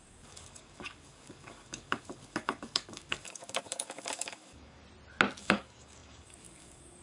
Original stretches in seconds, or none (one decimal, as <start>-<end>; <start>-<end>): 4.8-5.4